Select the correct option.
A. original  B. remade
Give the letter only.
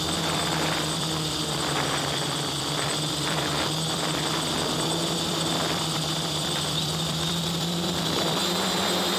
B